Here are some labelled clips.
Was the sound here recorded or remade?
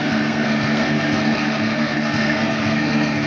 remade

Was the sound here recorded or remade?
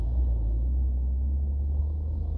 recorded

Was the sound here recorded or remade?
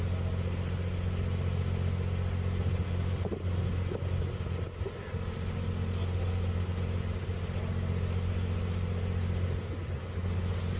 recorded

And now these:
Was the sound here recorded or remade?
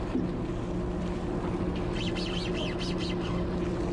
recorded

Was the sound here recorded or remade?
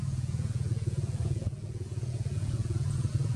remade